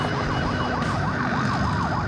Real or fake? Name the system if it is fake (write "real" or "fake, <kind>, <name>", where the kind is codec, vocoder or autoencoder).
real